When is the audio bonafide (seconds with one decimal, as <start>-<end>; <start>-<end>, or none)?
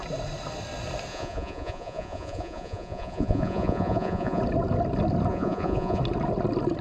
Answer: 0.0-1.1; 4.4-5.3; 6.0-6.8